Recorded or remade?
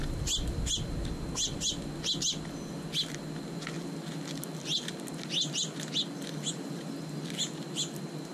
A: recorded